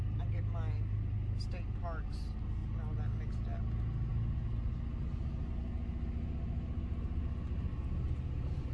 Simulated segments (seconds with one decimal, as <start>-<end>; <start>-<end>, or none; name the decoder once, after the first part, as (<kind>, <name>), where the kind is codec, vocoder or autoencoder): none

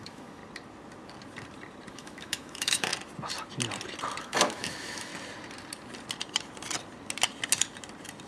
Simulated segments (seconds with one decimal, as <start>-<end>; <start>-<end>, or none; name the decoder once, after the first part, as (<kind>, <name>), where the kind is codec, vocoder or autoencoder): 0.0-0.4 (autoencoder, DAC-VAE); 1.9-2.9; 4.2-5.1

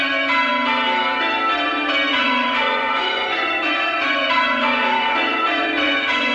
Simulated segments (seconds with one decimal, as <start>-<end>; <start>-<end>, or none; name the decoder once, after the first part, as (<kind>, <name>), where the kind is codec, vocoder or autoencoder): 2.1-6.3 (vocoder, Vocos)

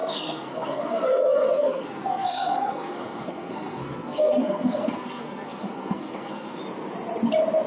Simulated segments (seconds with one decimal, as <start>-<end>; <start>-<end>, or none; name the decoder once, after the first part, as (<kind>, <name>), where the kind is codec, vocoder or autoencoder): 0.0-6.6 (codec, SNAC)